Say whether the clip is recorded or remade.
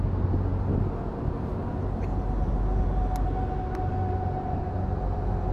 recorded